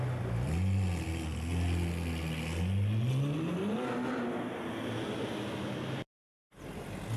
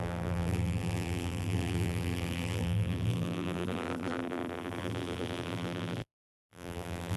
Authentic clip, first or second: first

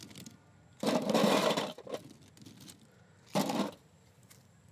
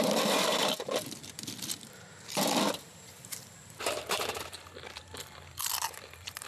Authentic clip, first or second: first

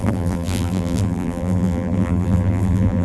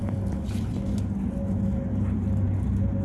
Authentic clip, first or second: second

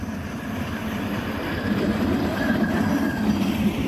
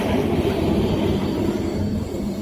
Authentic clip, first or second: first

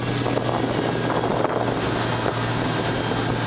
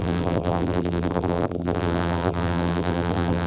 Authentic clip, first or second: first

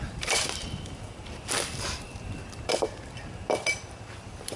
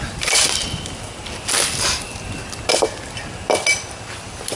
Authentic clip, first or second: second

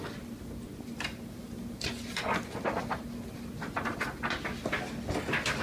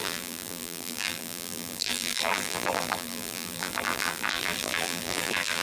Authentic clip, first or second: first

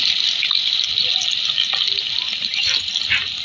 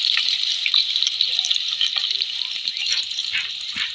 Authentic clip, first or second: first